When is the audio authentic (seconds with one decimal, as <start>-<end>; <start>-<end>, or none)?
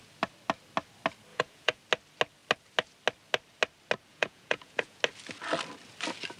0.0-1.3; 1.8-4.1; 5.0-6.4